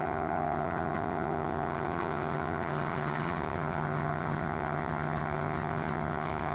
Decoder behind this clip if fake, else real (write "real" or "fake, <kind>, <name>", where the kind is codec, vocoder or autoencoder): fake, vocoder, HiFi-GAN